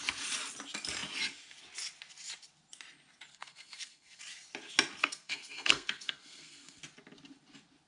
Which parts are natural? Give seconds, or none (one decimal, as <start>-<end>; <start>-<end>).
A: 0.0-3.3; 4.2-5.0; 6.8-7.9

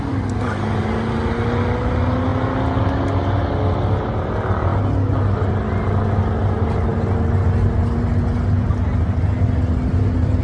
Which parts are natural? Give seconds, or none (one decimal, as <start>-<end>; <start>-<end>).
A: 0.0-10.4